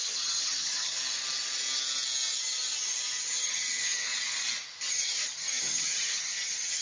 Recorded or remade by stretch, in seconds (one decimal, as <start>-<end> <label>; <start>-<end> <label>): 0.0-1.0 remade; 1.0-3.4 recorded; 3.4-4.1 remade; 4.1-4.9 recorded; 4.9-6.8 remade